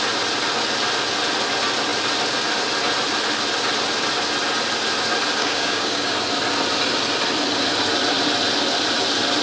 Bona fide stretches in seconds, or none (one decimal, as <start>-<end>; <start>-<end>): 0.0-5.4; 6.1-9.4